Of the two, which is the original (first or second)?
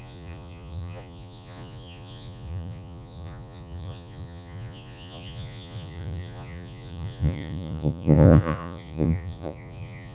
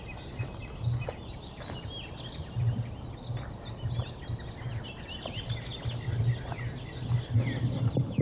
second